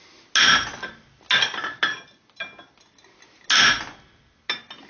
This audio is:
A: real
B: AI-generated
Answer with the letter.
A